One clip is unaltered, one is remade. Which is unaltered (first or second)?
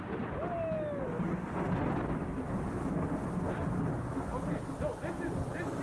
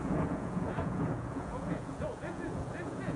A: first